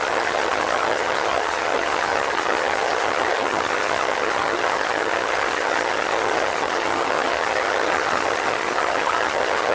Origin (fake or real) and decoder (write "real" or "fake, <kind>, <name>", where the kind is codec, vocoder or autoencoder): fake, vocoder, HiFi-GAN